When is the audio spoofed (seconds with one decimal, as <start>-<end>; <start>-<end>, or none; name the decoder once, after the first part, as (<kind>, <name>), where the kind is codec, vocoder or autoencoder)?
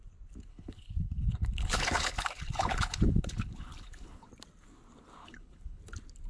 0.5-4.3 (codec, HILCodec); 5.2-5.8